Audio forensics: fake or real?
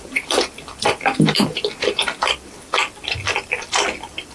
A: fake